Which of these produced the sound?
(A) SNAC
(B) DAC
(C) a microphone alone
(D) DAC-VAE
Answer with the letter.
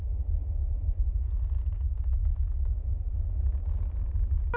C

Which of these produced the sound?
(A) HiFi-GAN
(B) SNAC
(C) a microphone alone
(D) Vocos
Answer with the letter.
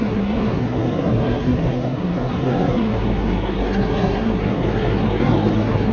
B